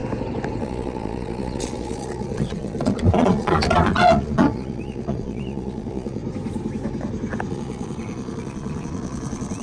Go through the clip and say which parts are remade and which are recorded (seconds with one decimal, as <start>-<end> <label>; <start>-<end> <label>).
0.0-0.6 recorded; 0.6-6.2 remade; 6.2-7.5 recorded; 7.5-9.6 remade